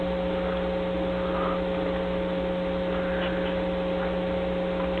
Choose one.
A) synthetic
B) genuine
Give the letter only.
B